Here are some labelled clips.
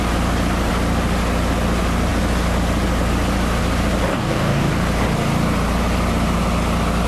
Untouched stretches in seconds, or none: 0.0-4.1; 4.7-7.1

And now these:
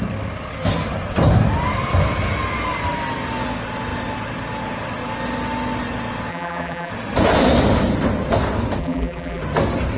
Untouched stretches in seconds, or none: 0.0-6.3; 6.9-8.8; 9.4-10.0